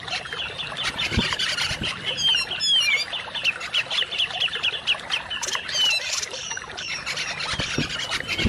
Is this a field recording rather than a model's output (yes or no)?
yes